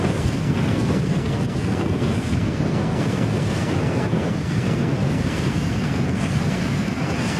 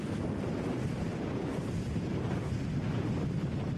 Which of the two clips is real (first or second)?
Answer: second